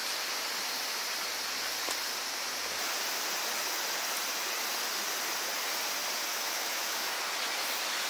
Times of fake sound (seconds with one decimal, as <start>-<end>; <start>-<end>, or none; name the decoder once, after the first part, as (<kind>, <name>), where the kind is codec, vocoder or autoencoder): 6.3-7.1 (autoencoder, DAC-VAE)